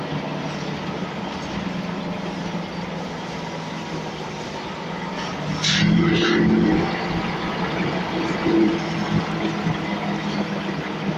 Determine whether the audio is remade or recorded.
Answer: recorded